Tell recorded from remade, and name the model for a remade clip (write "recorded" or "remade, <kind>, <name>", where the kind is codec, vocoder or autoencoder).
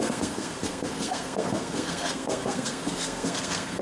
remade, codec, SNAC